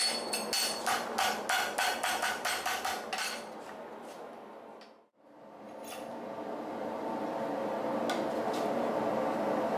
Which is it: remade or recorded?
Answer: recorded